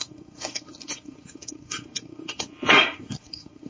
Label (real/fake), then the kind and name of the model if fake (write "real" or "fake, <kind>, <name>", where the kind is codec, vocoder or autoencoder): fake, codec, SNAC